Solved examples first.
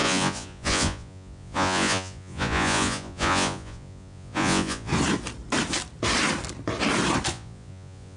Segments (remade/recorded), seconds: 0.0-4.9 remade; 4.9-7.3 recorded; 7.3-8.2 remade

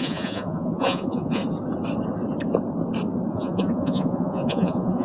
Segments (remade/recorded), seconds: 0.0-1.4 remade; 1.4-3.3 recorded; 3.3-5.0 remade

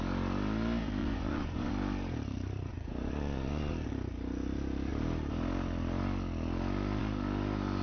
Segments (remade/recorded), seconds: 0.0-1.0 recorded; 1.0-1.7 remade; 1.7-2.7 recorded; 2.7-3.7 remade; 3.7-7.8 recorded

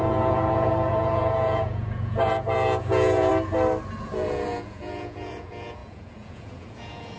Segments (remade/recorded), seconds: 0.0-3.3 remade; 3.3-4.0 recorded; 4.0-7.2 remade

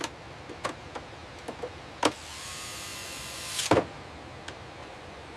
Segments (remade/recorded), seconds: 0.0-2.9 recorded; 2.9-3.4 remade; 3.4-4.8 recorded; 4.8-5.4 remade

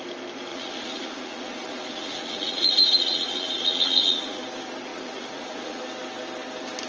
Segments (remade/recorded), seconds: 0.0-0.5 recorded; 0.5-4.4 remade; 4.4-4.9 recorded; 4.9-5.8 remade; 5.8-6.9 recorded